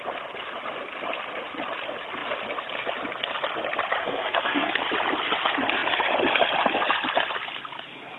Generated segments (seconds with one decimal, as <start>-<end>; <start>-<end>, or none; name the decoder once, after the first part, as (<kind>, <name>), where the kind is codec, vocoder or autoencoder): 4.0-4.7 (codec, SNAC)